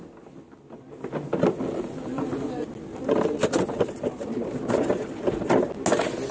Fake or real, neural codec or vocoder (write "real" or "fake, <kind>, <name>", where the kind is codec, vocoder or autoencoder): real